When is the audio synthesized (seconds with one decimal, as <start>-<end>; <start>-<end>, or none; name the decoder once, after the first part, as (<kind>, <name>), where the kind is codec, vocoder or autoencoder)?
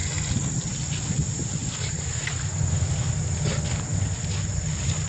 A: none